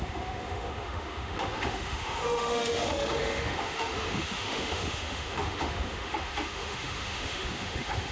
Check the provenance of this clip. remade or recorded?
remade